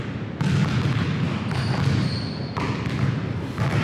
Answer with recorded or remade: recorded